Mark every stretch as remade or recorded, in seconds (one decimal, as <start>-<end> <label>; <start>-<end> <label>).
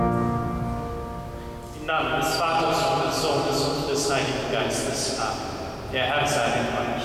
0.0-7.0 recorded